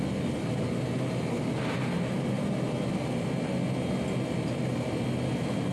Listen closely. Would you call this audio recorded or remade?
recorded